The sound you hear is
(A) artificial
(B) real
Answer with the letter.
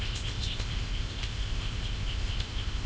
A